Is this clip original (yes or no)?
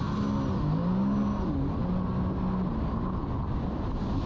yes